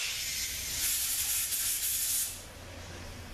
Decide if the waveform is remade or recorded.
recorded